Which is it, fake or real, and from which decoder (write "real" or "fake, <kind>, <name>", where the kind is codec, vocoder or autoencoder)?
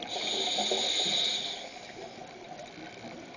real